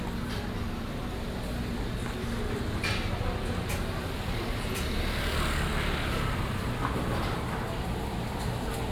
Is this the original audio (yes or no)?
yes